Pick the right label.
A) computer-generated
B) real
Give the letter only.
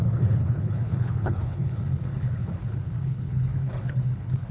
A